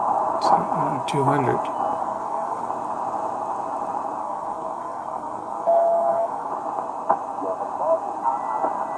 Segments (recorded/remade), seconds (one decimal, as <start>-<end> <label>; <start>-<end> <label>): 0.0-2.0 recorded; 2.0-2.7 remade; 2.7-4.2 recorded; 4.2-6.5 remade; 6.5-9.0 recorded